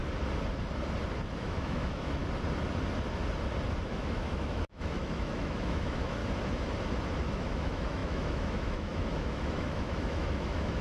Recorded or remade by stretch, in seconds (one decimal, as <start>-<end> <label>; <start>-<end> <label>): 0.0-1.3 recorded; 1.3-2.2 remade; 2.2-3.9 recorded; 3.9-6.2 remade; 6.2-7.3 recorded; 7.3-10.8 remade